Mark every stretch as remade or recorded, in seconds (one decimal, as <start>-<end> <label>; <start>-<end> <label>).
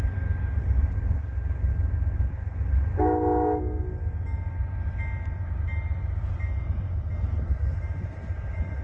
0.0-8.8 recorded